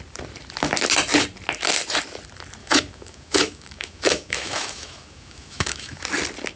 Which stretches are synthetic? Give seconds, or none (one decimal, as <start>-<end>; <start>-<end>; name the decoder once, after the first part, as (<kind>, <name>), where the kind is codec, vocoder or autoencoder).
2.6-6.0 (autoencoder, DAC-VAE)